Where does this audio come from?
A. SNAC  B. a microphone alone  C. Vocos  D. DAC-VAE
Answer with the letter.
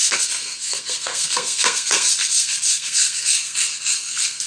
A